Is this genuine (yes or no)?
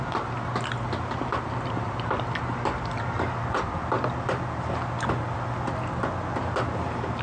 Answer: yes